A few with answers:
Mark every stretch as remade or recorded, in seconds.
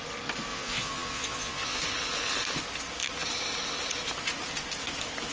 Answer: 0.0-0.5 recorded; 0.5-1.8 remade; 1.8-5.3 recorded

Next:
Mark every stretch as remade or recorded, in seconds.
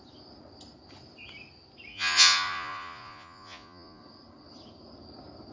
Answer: 0.0-1.9 recorded; 1.9-4.0 remade; 4.0-5.5 recorded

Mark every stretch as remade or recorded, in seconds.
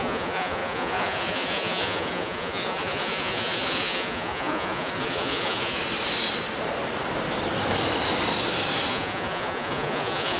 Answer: 0.0-5.8 remade; 5.8-8.9 recorded; 8.9-10.4 remade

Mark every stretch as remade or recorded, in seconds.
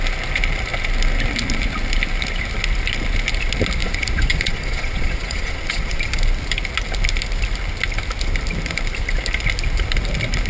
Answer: 0.0-3.8 recorded; 3.8-6.1 remade; 6.1-10.5 recorded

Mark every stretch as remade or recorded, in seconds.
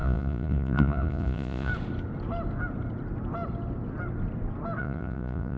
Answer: 0.0-1.7 remade; 1.7-4.8 recorded; 4.8-5.6 remade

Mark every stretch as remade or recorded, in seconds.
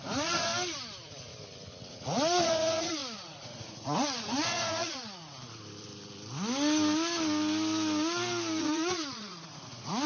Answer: 0.0-0.5 remade; 0.5-1.9 recorded; 1.9-5.2 remade; 5.2-8.6 recorded; 8.6-10.1 remade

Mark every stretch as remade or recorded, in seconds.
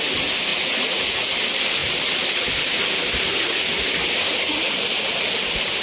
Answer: 0.0-0.5 recorded; 0.5-1.3 remade; 1.3-5.8 recorded